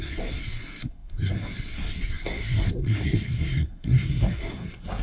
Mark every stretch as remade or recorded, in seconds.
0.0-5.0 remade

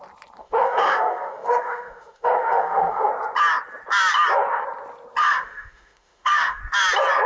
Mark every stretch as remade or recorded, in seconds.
0.0-0.4 recorded; 0.4-3.1 remade; 3.1-5.2 recorded; 5.2-6.6 remade; 6.6-7.3 recorded

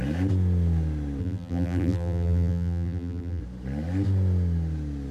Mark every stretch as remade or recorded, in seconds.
0.0-1.2 recorded; 1.2-3.4 remade; 3.4-5.1 recorded

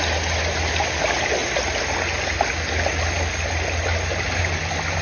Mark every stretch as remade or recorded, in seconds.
0.0-5.0 recorded

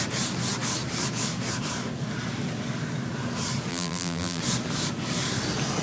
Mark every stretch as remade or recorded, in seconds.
0.0-3.7 recorded; 3.7-4.4 remade; 4.4-5.8 recorded

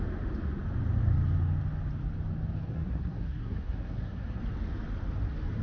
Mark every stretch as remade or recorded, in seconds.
0.0-2.7 recorded; 2.7-4.4 remade; 4.4-5.6 recorded

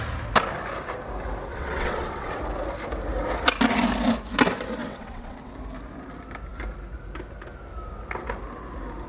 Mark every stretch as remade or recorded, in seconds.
0.0-1.5 recorded; 1.5-2.4 remade; 2.4-4.8 recorded; 4.8-5.5 remade; 5.5-9.1 recorded

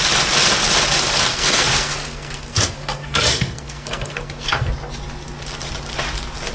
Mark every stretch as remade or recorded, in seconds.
0.0-1.3 recorded; 1.3-4.7 remade; 4.7-6.5 recorded